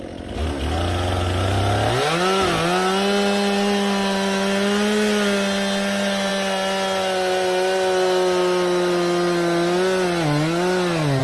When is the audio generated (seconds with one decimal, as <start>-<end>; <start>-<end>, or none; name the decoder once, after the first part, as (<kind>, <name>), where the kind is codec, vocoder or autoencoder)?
none